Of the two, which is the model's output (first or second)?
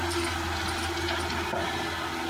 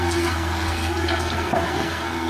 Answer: second